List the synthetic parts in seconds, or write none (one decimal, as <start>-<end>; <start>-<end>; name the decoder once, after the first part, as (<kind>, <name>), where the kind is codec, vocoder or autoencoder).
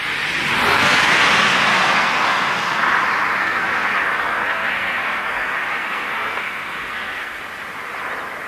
0.7-1.2 (codec, SNAC); 1.7-2.8; 3.4-7.4